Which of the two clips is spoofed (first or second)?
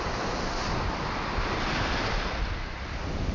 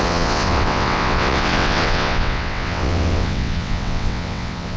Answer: second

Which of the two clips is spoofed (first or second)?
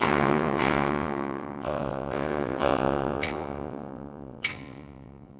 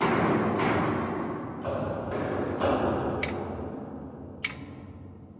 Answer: first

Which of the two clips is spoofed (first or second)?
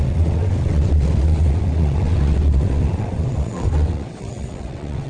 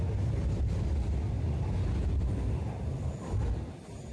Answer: first